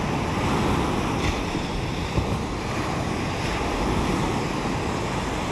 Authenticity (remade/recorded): recorded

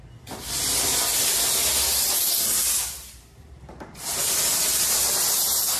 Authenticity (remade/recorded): recorded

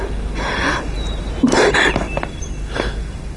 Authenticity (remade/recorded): recorded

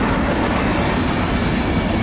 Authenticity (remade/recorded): recorded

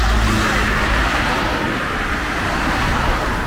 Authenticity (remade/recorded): recorded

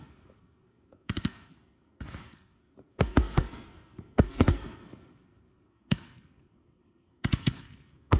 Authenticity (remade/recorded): remade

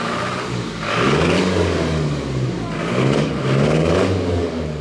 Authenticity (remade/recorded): remade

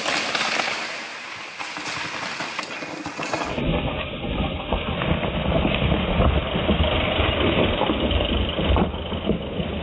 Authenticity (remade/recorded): recorded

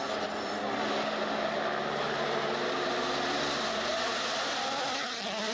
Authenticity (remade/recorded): recorded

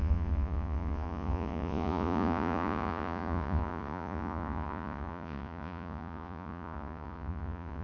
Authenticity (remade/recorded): remade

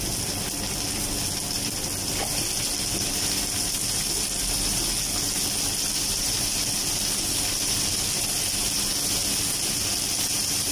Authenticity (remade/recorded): recorded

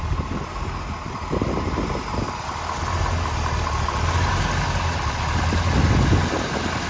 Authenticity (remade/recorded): recorded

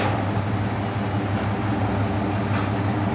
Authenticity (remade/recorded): recorded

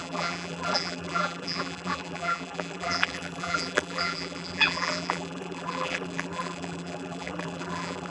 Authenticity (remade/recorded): remade